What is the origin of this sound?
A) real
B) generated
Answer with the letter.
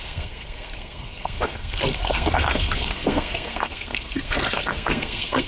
B